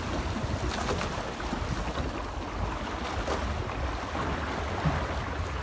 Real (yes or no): yes